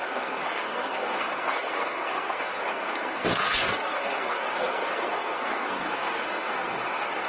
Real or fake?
fake